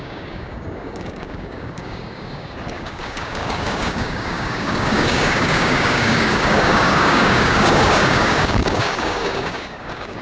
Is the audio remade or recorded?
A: remade